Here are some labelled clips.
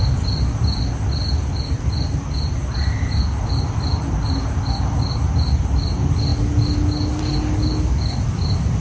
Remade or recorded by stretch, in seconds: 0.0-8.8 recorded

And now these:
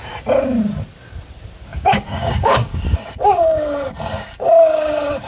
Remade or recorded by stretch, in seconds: 0.0-1.7 recorded; 1.7-5.3 remade

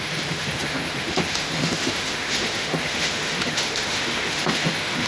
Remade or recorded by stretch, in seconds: 0.0-5.1 remade

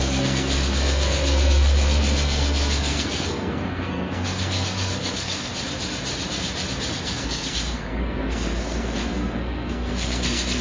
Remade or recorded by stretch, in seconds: 0.0-5.5 remade; 5.5-6.9 recorded; 6.9-10.6 remade

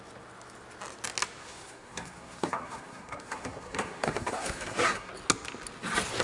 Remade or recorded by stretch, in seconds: 0.0-1.4 recorded; 1.4-5.1 remade; 5.1-6.2 recorded

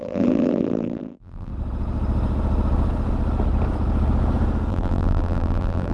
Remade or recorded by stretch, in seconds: 0.0-1.5 remade; 1.5-4.7 recorded; 4.7-5.9 remade

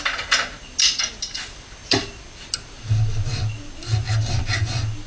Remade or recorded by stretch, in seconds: 0.0-5.1 recorded

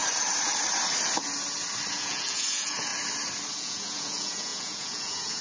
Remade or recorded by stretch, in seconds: 0.0-1.9 recorded; 1.9-2.9 remade; 2.9-3.6 recorded; 3.6-5.4 remade